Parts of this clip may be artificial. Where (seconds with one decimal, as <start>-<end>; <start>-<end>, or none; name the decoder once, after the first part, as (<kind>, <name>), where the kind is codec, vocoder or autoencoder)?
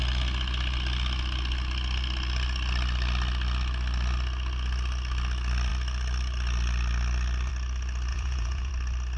8.1-8.7 (vocoder, Vocos)